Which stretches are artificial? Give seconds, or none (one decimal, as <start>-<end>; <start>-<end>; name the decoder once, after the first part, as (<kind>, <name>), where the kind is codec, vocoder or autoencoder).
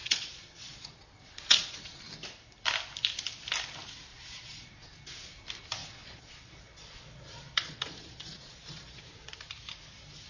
0.0-2.0 (vocoder, Vocos); 4.1-4.9; 5.8-9.3